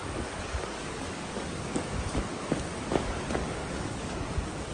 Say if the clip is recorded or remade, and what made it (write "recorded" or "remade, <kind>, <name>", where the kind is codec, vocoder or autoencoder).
remade, codec, DAC